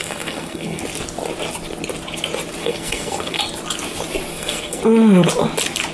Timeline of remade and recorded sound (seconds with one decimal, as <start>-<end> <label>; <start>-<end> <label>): 0.0-0.8 remade; 0.8-2.6 recorded; 2.6-3.4 remade; 3.4-4.3 recorded; 4.3-4.8 remade; 4.8-5.9 recorded